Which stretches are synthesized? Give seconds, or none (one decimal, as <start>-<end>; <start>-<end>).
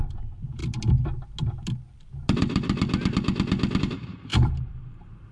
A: 0.0-0.6; 3.8-4.3; 4.8-5.3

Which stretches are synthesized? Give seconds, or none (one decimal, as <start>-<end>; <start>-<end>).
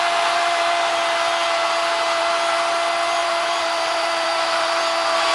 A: 3.2-4.8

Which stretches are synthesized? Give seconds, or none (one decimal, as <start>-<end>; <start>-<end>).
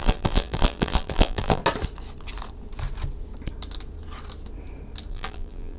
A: 0.0-1.6; 5.1-5.8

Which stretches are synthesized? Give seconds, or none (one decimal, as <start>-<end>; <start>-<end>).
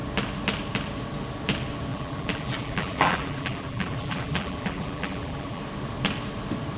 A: 1.9-5.6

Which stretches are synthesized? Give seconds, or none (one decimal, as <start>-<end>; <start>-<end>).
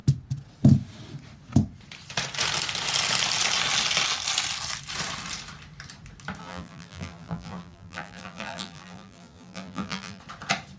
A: 6.4-10.2